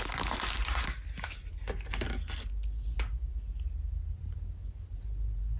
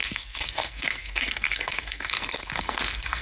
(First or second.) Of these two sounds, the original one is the first